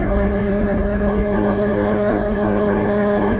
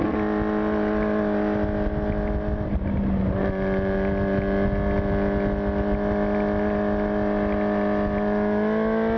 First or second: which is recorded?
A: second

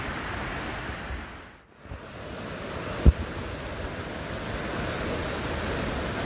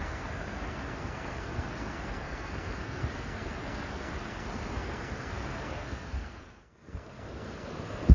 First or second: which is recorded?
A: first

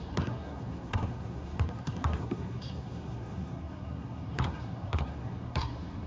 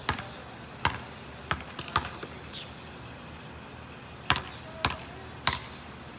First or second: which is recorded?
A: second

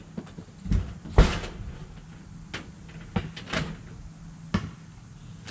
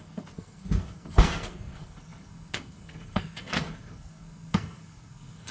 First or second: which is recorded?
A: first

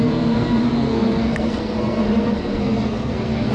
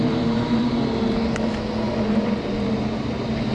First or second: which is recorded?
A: second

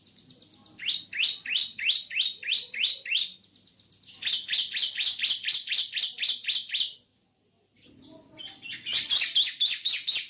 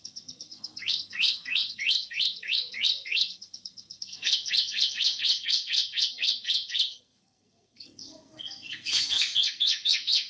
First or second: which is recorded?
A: first